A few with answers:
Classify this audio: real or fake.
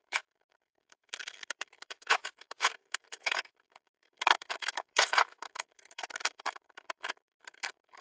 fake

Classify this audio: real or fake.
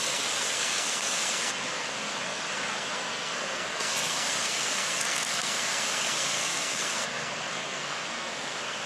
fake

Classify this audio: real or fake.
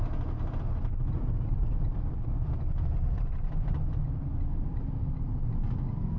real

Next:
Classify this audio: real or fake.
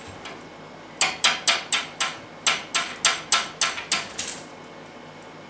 real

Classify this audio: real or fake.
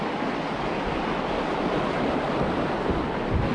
real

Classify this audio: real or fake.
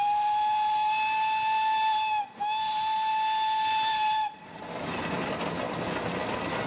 real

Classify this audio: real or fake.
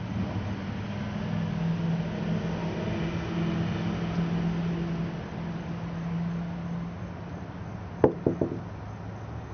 real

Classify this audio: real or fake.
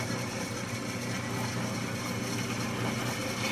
real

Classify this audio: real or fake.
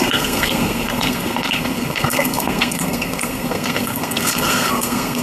fake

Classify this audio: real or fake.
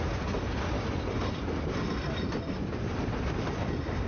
fake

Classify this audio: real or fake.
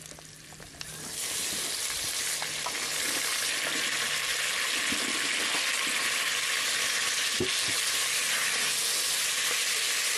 real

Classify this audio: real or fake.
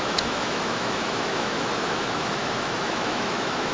fake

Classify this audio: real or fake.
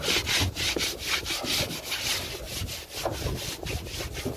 real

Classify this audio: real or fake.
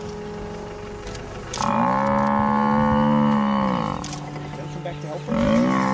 real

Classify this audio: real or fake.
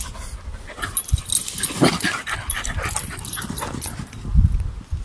real